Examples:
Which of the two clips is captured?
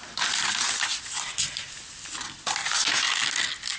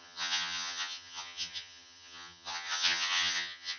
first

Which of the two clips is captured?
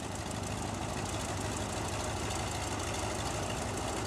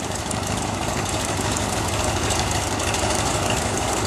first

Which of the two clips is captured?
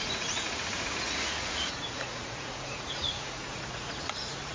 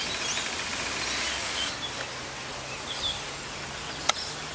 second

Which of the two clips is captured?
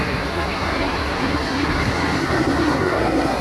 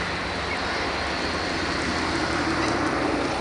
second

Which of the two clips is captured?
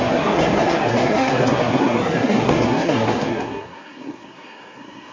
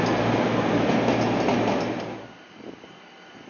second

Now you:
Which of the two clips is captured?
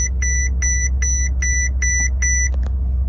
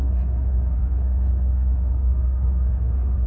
first